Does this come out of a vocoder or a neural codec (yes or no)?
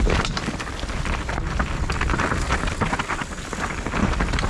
no